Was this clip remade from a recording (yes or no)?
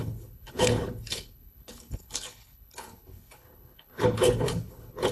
yes